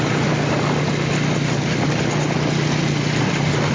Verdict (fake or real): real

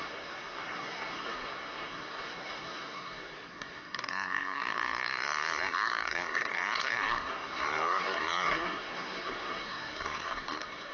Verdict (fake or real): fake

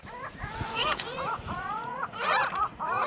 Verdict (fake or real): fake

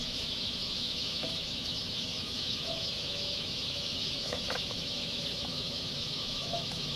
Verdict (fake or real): fake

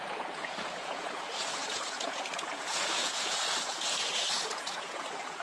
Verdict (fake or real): fake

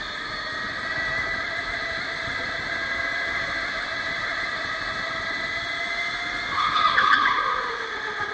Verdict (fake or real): real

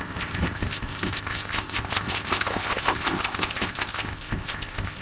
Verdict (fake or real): fake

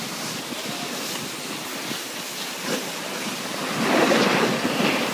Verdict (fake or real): real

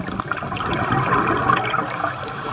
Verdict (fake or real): real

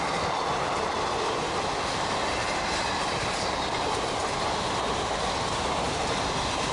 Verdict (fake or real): real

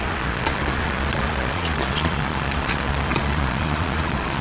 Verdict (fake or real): fake